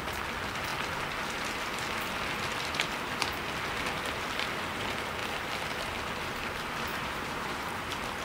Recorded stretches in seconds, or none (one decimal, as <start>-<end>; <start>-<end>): 0.0-6.9; 7.7-8.2